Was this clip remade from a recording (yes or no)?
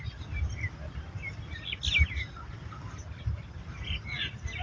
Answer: no